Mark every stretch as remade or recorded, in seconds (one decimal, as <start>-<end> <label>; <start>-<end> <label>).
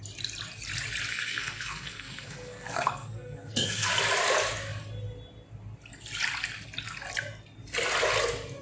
0.0-1.1 recorded; 1.1-3.9 remade; 3.9-8.6 recorded